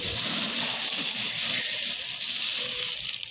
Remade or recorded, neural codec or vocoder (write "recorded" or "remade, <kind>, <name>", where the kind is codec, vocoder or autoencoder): recorded